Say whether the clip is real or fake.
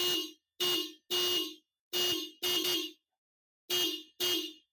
real